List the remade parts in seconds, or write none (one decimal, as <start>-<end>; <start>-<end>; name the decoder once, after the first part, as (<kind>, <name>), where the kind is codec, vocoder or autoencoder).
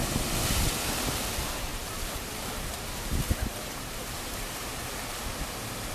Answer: 1.7-5.2 (vocoder, BigVGAN v2)